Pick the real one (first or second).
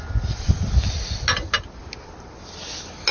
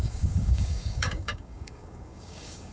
first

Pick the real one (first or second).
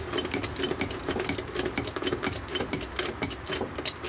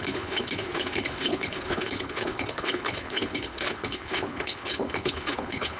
first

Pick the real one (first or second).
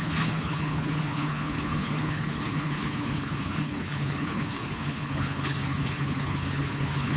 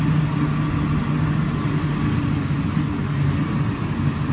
second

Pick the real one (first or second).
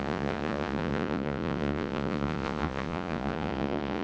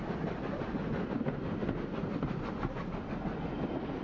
second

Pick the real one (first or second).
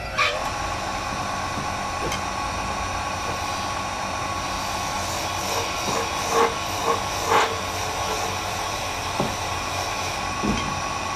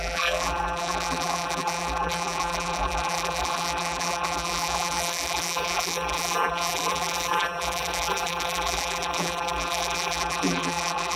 first